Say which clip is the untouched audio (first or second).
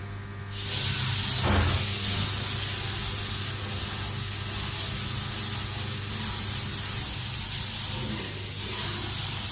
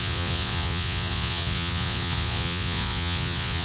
first